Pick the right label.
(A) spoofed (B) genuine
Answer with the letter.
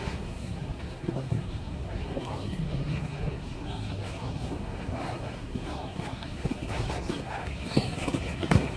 A